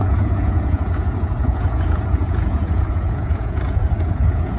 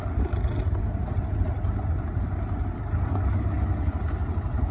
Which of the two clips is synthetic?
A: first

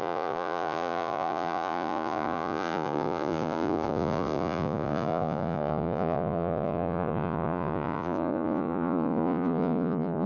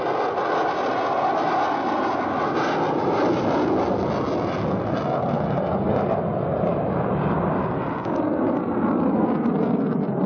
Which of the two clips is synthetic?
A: first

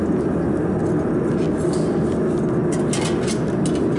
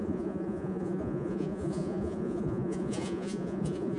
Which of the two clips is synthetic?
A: second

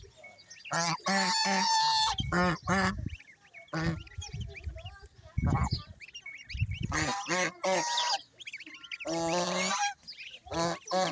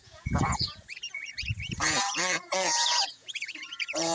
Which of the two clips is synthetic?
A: second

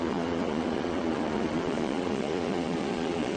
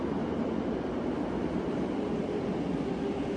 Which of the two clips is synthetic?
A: first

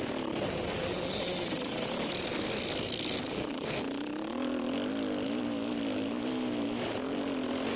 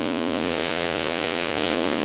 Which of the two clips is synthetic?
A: second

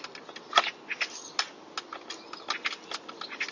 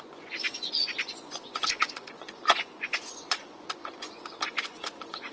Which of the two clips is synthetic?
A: second